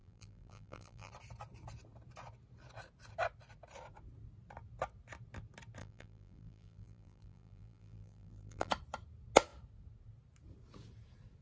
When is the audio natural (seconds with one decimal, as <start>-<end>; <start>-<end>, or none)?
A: 1.1-5.8; 8.7-11.4